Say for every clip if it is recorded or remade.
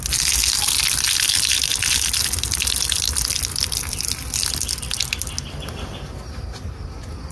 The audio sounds recorded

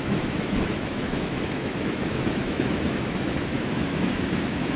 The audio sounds remade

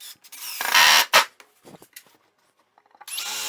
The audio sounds recorded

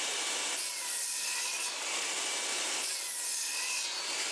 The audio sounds recorded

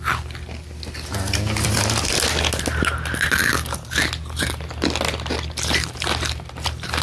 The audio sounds recorded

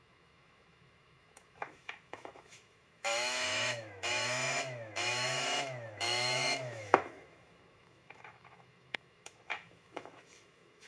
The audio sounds remade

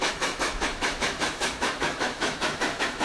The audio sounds remade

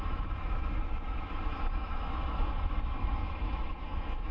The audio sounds remade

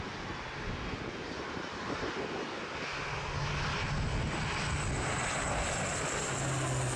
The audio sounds recorded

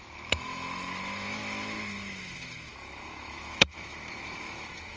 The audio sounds remade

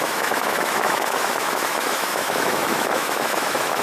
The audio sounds remade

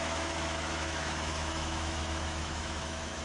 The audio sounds remade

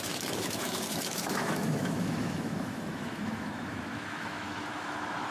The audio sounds remade